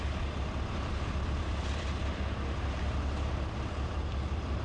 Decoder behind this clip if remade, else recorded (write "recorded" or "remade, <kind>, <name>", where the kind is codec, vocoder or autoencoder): remade, vocoder, BigVGAN v2